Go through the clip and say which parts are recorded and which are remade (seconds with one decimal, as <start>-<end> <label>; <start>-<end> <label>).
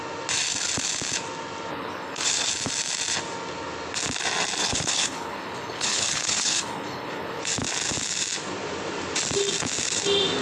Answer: 0.0-1.7 recorded; 1.7-2.5 remade; 2.5-4.6 recorded; 4.6-7.4 remade; 7.4-10.4 recorded